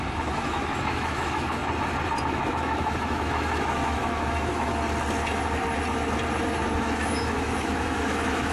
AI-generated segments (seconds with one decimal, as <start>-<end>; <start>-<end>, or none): 0.0-1.6; 2.2-4.7; 6.8-8.5